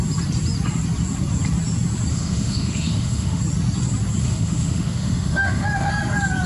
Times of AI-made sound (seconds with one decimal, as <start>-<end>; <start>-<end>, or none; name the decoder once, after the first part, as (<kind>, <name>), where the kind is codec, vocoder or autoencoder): 2.1-3.4 (autoencoder, DAC-VAE); 4.2-5.9